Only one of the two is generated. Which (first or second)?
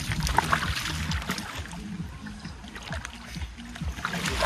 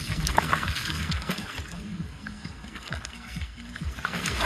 second